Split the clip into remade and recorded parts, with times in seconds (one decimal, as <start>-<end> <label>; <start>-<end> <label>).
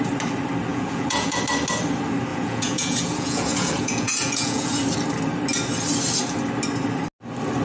0.0-0.7 recorded; 0.7-1.4 remade; 1.4-2.3 recorded; 2.3-4.7 remade; 4.7-7.6 recorded